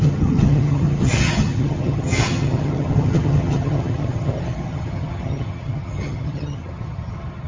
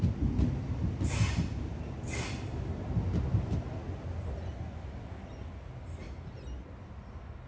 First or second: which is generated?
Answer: first